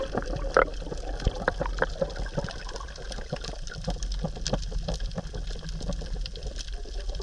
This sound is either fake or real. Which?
real